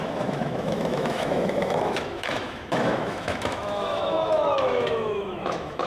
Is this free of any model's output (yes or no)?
no